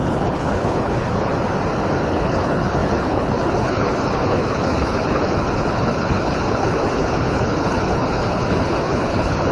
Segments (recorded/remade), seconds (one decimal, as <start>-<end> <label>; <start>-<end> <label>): 0.0-1.3 remade; 1.3-1.9 recorded; 1.9-9.5 remade